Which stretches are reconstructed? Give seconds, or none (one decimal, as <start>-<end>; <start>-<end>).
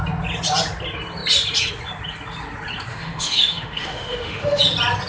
2.9-4.6